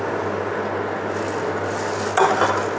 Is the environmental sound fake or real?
real